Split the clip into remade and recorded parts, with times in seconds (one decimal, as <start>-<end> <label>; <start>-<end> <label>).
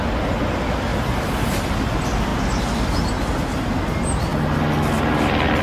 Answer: 0.0-5.6 recorded